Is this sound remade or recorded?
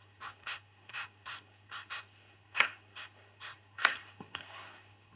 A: remade